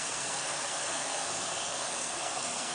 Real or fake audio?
fake